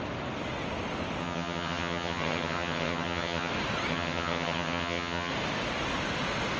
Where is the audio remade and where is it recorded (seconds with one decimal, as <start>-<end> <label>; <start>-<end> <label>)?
0.0-1.2 recorded; 1.2-3.5 remade; 3.5-3.9 recorded; 3.9-5.3 remade; 5.3-6.6 recorded